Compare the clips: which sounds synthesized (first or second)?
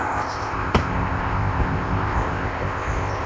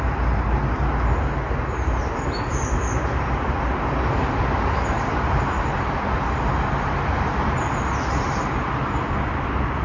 first